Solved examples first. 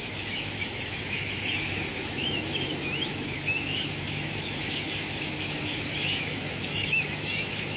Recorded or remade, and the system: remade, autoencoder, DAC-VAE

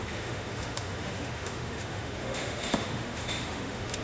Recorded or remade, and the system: remade, autoencoder, DAC-VAE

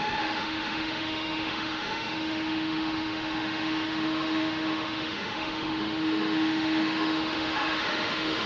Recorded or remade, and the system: remade, autoencoder, DAC-VAE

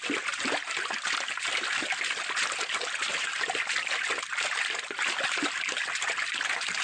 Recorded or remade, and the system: recorded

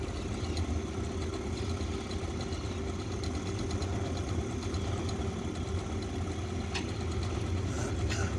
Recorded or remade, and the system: recorded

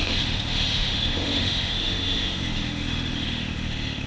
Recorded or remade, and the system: remade, autoencoder, DAC-VAE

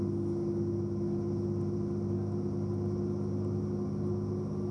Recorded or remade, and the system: recorded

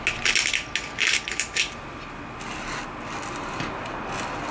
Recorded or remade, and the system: recorded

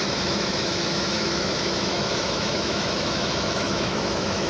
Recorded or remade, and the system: remade, autoencoder, DAC-VAE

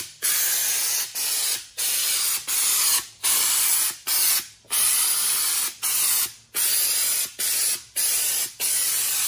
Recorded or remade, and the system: recorded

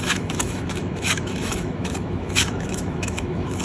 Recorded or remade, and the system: remade, autoencoder, DAC-VAE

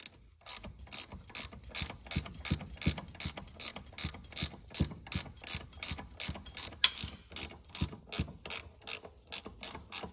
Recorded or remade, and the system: recorded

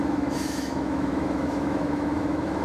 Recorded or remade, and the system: remade, autoencoder, DAC-VAE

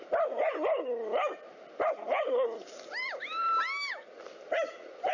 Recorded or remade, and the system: recorded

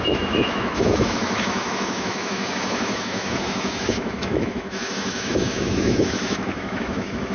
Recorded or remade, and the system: remade, autoencoder, DAC-VAE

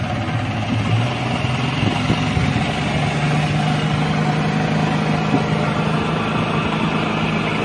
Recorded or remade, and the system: recorded